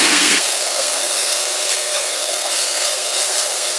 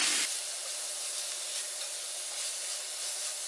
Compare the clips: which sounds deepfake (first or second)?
first